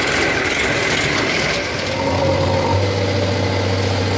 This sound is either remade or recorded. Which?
recorded